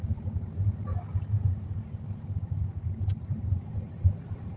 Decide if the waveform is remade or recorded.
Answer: recorded